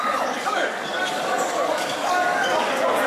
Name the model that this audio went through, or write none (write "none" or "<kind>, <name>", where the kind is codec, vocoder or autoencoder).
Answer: codec, DAC